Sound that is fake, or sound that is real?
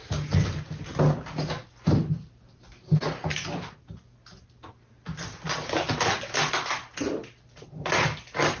real